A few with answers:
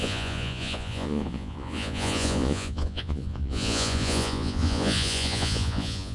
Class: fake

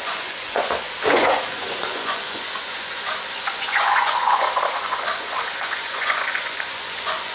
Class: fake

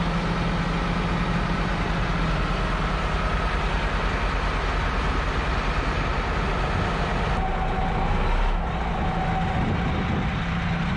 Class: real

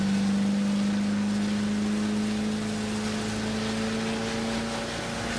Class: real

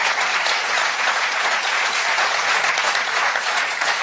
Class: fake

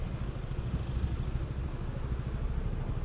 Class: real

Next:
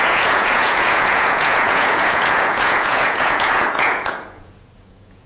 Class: fake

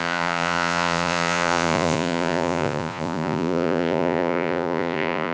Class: fake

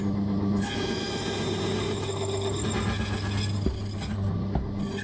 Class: real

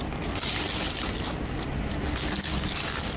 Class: real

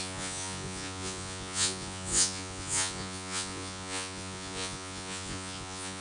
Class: fake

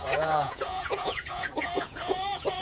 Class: fake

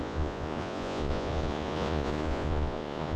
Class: fake